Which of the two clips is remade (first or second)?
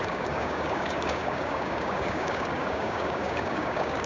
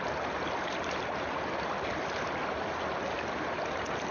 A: first